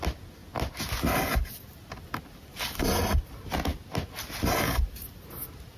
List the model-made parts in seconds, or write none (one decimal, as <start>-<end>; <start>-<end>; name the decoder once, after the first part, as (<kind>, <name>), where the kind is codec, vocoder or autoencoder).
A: none